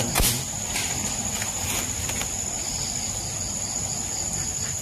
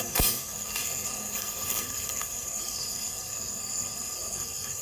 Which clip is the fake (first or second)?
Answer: second